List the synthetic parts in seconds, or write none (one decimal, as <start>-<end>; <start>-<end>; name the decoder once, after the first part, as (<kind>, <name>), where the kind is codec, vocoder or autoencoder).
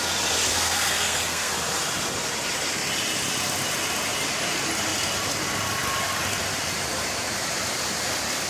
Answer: 0.5-1.5 (codec, SNAC)